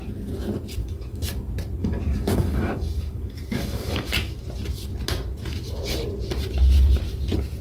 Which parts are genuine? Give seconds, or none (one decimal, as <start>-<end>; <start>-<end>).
0.0-0.8; 1.3-1.8; 4.4-7.6